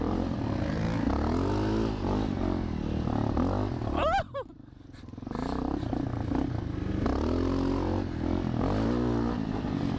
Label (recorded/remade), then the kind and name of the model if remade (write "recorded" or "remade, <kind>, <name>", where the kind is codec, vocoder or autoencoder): recorded